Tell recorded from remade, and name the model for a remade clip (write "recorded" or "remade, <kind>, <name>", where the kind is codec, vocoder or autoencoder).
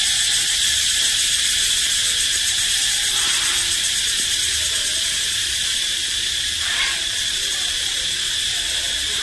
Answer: remade, vocoder, BigVGAN v2